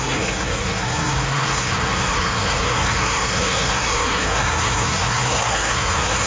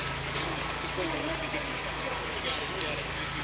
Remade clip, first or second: first